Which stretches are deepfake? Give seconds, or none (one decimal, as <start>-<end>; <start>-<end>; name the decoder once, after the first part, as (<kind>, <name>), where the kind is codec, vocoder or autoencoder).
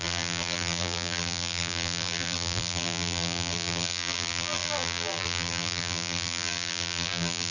0.0-7.5 (vocoder, BigVGAN v2)